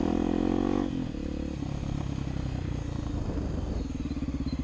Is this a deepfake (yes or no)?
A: no